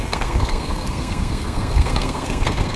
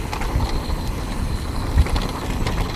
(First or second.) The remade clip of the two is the first